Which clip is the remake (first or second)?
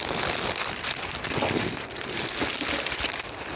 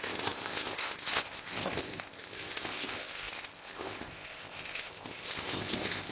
second